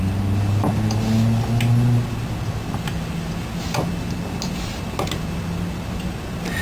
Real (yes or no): yes